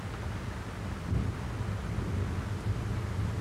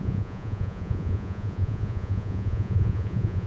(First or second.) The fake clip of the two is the second